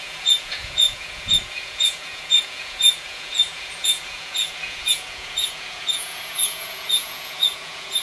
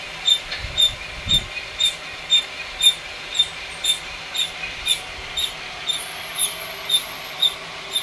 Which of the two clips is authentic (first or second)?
second